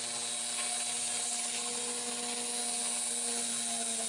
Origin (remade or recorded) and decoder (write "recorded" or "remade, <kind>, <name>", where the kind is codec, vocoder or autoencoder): recorded